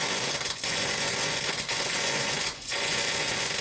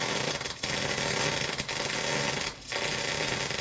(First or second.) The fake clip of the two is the first